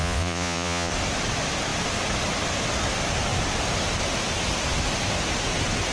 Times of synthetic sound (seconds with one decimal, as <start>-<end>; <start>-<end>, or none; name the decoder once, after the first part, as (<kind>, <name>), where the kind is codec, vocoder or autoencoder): 0.0-0.9 (vocoder, Vocos)